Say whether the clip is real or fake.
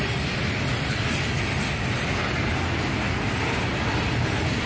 real